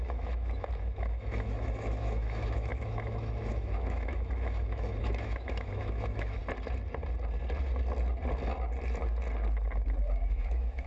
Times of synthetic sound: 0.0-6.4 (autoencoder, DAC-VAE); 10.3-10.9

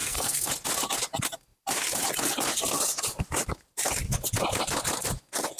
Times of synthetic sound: 0.0-0.5 (codec, SNAC)

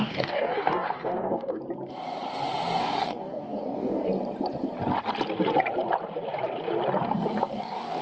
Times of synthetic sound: 0.0-1.6 (codec, DAC); 2.8-4.1; 7.5-8.0

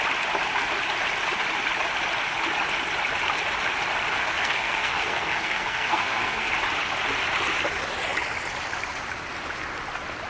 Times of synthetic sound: 4.2-6.5 (codec, SNAC)

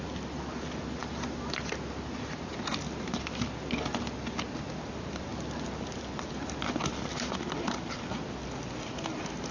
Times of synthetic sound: 1.0-1.7 (vocoder, BigVGAN v2)